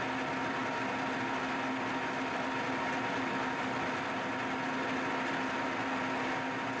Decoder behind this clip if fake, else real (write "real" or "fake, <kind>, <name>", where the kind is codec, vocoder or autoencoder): real